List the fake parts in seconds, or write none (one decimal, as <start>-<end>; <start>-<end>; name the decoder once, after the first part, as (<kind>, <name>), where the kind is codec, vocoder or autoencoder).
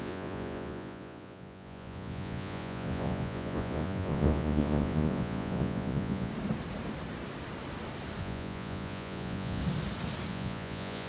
0.0-6.3 (vocoder, Vocos); 8.2-9.6; 10.3-11.1